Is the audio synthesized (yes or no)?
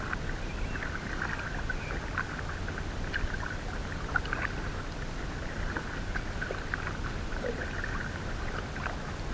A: no